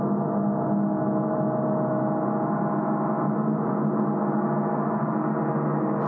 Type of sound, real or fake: real